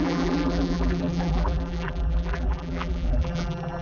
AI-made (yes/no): yes